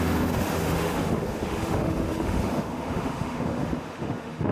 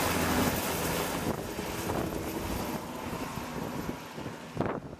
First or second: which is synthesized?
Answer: first